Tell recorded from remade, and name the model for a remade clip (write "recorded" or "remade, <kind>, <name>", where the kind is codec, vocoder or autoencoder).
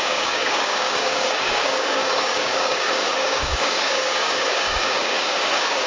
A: remade, codec, DAC